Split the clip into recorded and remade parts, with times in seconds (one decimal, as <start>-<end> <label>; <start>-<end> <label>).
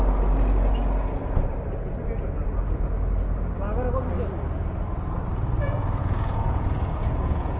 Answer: 0.0-6.0 recorded; 6.0-7.6 remade